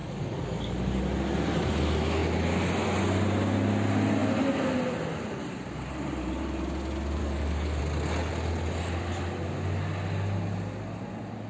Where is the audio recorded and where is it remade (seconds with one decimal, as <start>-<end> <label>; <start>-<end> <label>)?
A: 0.0-1.0 remade; 1.0-7.2 recorded; 7.2-7.8 remade; 7.8-11.5 recorded